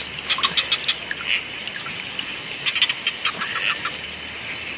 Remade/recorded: recorded